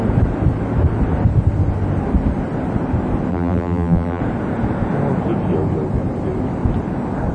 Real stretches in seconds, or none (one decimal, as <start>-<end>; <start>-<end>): 0.0-3.3; 4.2-7.3